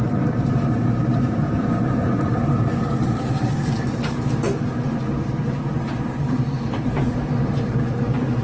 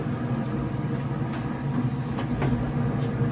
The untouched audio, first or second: second